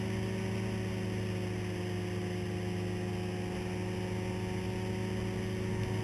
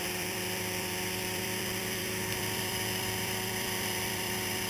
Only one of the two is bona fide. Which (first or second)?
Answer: first